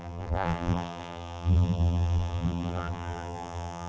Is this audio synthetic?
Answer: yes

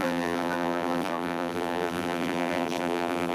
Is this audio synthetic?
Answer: yes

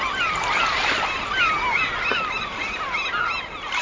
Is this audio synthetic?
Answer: yes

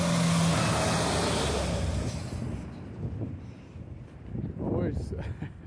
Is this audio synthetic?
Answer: no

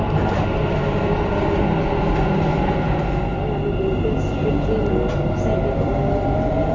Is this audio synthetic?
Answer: no